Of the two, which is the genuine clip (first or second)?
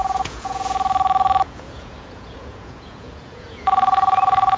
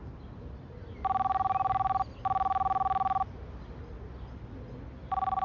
second